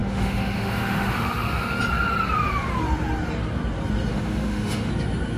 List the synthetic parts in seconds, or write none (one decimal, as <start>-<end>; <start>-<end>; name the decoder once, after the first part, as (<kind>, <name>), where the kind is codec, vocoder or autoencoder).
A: 0.0-1.8 (autoencoder, DAC-VAE); 4.1-4.9